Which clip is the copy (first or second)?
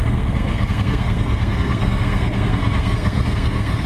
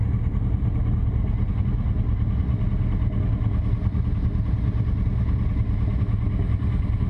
first